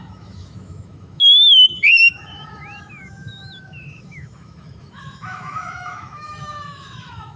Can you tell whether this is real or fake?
fake